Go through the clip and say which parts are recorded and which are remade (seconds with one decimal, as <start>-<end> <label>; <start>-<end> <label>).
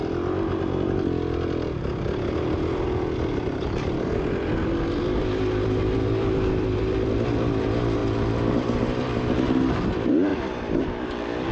0.0-11.5 recorded